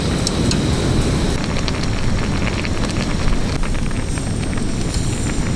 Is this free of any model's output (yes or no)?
yes